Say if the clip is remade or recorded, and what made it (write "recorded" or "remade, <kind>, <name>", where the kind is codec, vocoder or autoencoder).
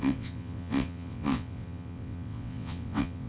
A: remade, vocoder, WaveNeXt